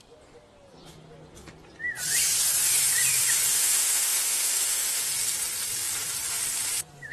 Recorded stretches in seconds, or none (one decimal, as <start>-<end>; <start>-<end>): 0.0-3.5; 5.1-7.1